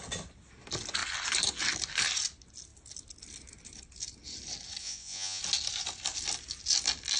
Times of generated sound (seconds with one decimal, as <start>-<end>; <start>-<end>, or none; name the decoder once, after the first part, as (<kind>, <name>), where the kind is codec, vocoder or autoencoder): 4.8-5.4 (vocoder, Vocos)